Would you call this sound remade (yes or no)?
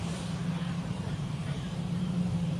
yes